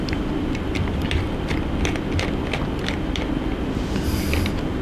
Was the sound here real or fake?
real